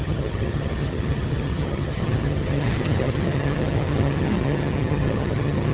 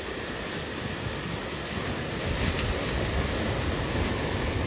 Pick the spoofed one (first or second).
first